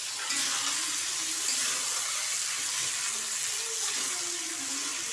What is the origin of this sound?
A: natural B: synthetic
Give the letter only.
A